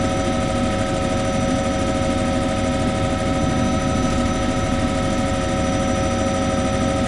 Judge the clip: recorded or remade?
recorded